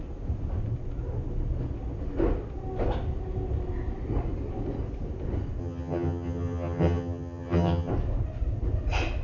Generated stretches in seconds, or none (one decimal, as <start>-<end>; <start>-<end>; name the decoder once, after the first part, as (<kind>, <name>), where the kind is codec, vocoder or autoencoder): 5.6-7.9 (vocoder, HiFi-GAN)

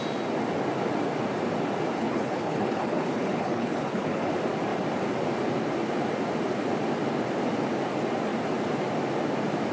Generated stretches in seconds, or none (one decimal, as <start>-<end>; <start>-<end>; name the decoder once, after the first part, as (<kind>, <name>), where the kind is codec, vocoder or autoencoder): 2.0-4.3 (codec, HILCodec)

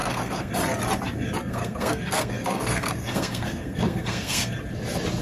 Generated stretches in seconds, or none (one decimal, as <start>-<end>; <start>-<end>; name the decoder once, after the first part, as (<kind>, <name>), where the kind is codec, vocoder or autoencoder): 0.0-0.5 (codec, SNAC); 1.4-4.5

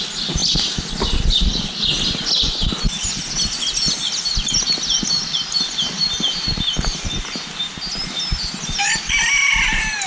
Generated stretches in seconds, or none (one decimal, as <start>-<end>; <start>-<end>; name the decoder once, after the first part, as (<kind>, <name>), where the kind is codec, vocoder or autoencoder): none

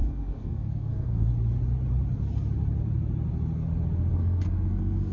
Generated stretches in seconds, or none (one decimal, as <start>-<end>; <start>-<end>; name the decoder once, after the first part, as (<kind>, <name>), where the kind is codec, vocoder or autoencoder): 0.0-1.3 (codec, SNAC); 4.1-5.1